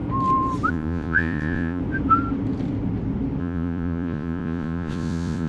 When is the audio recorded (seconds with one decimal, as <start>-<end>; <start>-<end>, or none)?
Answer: 0.0-0.7; 1.8-3.4